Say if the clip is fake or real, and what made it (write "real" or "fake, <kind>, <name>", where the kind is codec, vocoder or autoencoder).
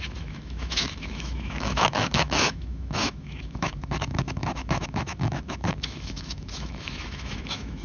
fake, autoencoder, DAC-VAE